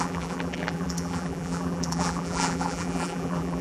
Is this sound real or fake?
fake